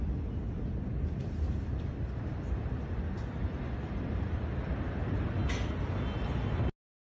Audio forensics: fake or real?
real